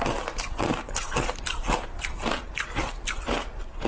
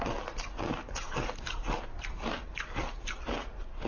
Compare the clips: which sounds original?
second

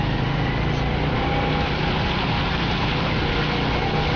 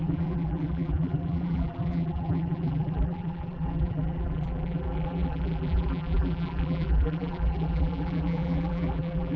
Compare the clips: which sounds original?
first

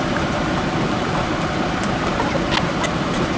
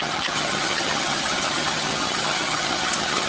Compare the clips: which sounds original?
first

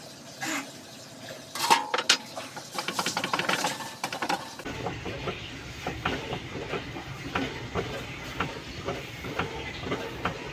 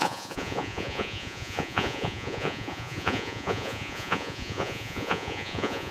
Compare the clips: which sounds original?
first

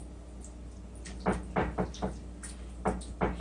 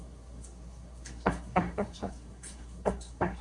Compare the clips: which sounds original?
first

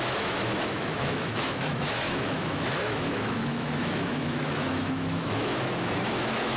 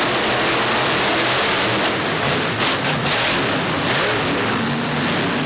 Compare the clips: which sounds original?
second